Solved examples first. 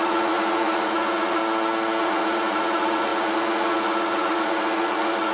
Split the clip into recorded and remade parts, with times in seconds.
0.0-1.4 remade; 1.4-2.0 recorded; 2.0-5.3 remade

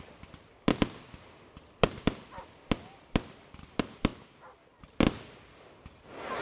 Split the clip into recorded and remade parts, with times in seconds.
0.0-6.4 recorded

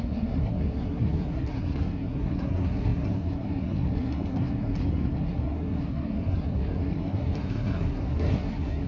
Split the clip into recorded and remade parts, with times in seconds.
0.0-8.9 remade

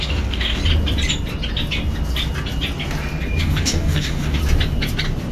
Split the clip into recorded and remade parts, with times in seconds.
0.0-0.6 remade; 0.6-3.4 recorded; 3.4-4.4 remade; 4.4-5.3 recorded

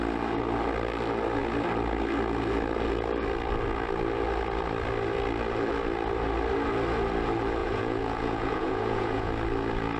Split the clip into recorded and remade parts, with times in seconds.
0.0-7.6 recorded; 7.6-9.3 remade; 9.3-10.0 recorded